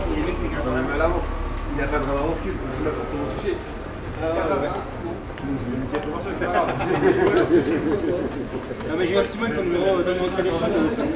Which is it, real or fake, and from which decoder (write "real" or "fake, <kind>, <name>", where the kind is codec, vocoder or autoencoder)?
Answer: real